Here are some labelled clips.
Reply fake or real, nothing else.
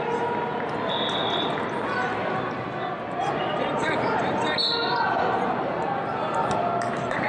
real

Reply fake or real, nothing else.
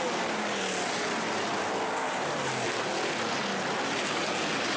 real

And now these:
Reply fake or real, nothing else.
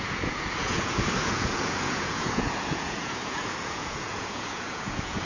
fake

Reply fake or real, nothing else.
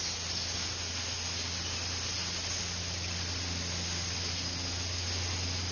real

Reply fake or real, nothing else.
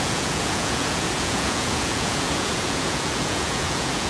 fake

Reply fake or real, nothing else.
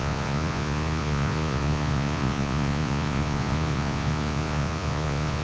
fake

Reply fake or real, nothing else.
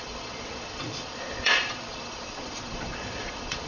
fake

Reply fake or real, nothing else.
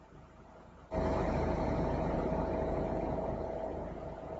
fake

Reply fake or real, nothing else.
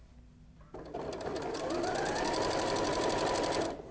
real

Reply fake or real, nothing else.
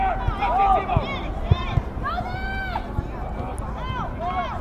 real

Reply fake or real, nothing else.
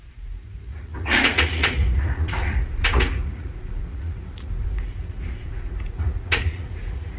fake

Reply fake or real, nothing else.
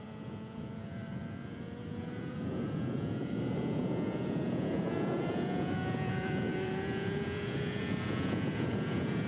fake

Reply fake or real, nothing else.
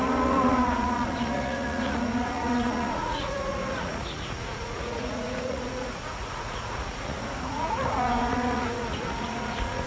fake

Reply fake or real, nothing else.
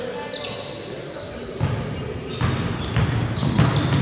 real